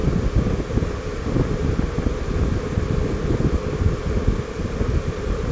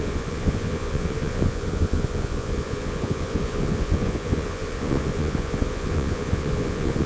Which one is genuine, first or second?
first